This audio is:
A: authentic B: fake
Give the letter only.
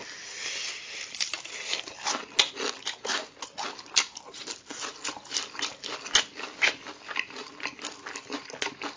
A